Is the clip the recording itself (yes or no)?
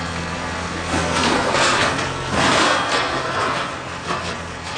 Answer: no